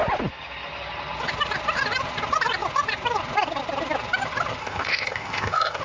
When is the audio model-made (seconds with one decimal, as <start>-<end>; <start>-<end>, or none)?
4.6-5.8